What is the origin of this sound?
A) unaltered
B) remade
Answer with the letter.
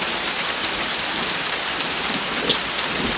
A